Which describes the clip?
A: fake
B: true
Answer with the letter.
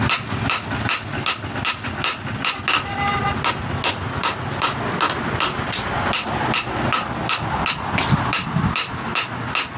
B